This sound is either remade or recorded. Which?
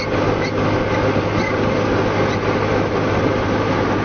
recorded